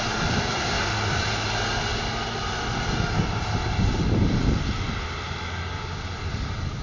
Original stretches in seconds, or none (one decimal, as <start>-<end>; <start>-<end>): 0.0-6.8